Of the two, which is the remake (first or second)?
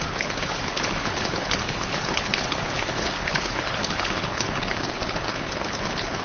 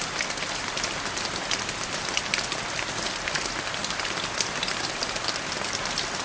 first